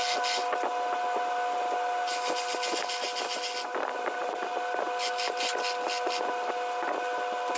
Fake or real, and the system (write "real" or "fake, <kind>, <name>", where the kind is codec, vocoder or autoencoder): real